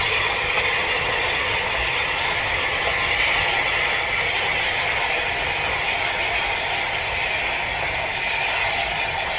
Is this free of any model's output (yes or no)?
yes